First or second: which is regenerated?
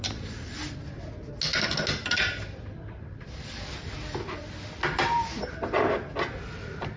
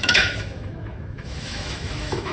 second